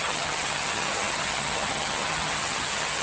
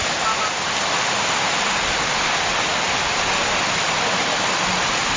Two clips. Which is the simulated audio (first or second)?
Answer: first